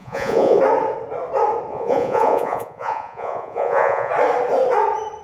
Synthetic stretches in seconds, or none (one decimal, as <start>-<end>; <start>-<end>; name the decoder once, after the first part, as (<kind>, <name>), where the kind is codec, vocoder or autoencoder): 0.0-0.6 (vocoder, Vocos); 1.7-4.1